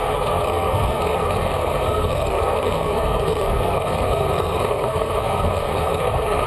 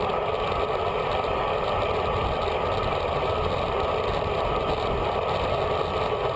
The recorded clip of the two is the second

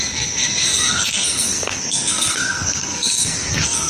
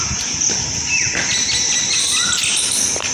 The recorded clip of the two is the second